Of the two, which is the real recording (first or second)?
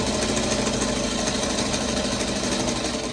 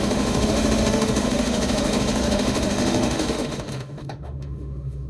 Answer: first